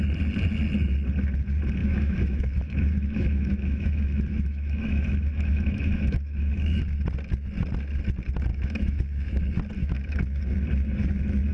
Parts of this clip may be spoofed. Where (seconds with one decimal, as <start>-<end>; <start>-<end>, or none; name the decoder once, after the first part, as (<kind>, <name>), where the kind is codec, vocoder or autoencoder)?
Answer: 1.8-6.8 (autoencoder, DAC-VAE); 8.5-9.4; 9.8-10.4